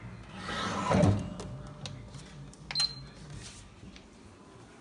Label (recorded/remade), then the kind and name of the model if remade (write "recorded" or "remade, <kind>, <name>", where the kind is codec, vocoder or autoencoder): recorded